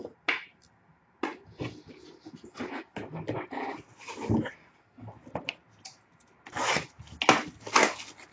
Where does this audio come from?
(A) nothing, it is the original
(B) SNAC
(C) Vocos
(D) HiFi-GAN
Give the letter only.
A